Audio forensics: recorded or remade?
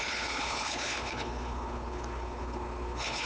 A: remade